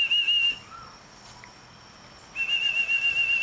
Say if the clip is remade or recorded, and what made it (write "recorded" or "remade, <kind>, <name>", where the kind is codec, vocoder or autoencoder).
recorded